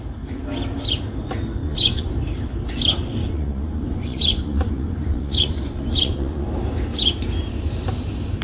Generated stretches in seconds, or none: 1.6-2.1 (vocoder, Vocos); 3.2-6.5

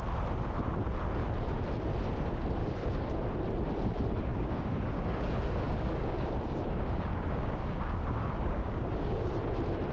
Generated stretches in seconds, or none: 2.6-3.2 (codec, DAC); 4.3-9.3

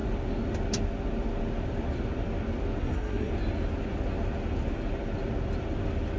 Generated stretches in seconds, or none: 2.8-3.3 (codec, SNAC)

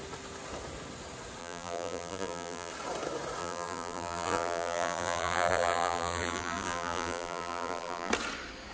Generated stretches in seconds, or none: 1.4-2.7 (vocoder, BigVGAN v2); 3.4-8.1

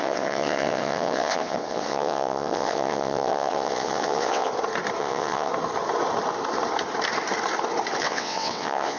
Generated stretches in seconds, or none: 0.0-4.5 (vocoder, WaveNeXt); 5.0-5.5; 8.0-9.0

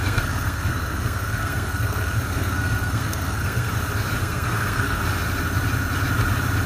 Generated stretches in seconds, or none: 0.0-3.7 (codec, SNAC); 4.2-5.0